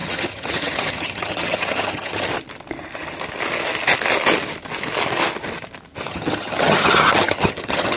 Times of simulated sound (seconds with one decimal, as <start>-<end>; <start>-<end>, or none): 0.0-2.3; 6.1-8.0